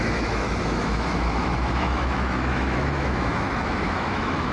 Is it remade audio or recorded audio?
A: remade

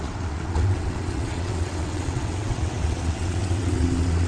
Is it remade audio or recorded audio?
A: remade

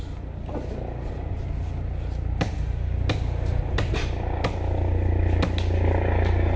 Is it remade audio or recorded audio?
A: recorded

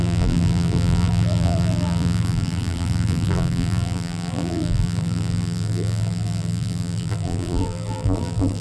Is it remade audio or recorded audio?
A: remade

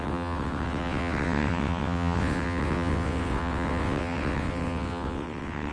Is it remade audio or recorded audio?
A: remade